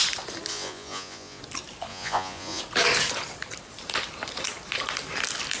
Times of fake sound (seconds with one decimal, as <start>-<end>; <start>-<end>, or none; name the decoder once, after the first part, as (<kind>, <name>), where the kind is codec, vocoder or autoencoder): 0.5-1.4 (vocoder, Vocos); 1.9-2.6